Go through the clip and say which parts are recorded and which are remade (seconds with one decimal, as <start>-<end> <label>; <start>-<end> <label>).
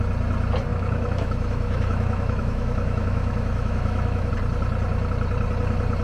0.0-0.7 recorded; 0.7-4.3 remade; 4.3-6.0 recorded